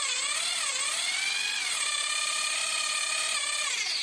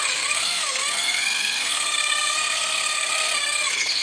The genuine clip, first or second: first